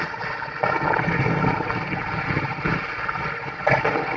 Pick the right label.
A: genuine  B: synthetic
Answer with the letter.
A